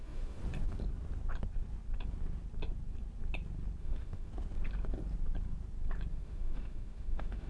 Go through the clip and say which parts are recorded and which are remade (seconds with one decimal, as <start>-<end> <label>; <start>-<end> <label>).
0.0-0.4 remade; 0.4-3.8 recorded; 3.8-4.3 remade; 4.3-6.1 recorded; 6.1-7.5 remade